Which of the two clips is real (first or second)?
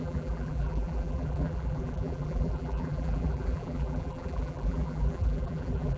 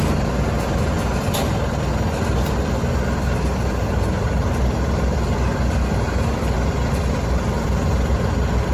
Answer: second